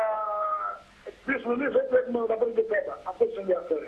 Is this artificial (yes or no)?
no